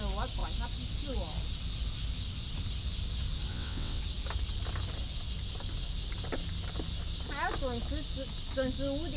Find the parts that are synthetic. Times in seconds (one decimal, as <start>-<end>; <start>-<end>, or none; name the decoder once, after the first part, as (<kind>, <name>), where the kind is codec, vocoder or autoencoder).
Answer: 3.5-4.0 (vocoder, WaveNeXt)